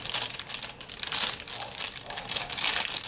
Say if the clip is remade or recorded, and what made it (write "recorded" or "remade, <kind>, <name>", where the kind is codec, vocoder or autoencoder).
recorded